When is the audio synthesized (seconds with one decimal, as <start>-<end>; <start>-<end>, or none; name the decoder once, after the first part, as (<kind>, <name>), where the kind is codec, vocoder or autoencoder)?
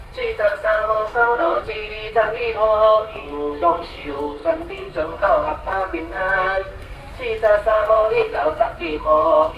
0.0-7.0 (codec, SNAC); 7.7-9.6